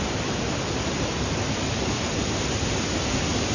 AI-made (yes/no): no